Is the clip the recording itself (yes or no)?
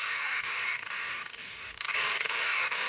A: no